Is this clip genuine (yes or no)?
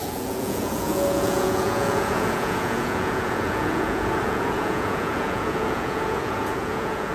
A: no